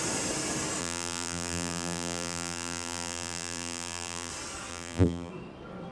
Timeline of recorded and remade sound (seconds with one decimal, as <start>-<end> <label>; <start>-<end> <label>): 0.0-0.8 recorded; 0.8-4.3 remade; 4.3-4.7 recorded; 4.7-5.3 remade; 5.3-5.9 recorded